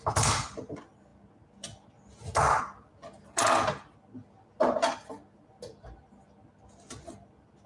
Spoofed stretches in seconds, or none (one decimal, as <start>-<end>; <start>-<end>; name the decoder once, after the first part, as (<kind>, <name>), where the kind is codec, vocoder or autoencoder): none